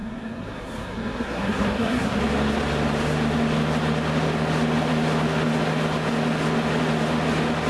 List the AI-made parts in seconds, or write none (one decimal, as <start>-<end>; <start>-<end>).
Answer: 0.0-2.2